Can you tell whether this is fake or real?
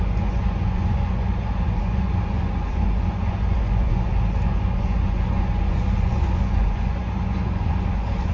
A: fake